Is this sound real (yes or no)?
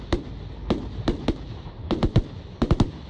yes